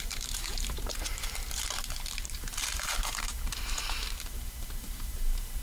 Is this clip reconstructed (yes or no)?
yes